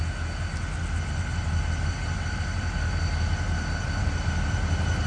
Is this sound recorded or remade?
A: recorded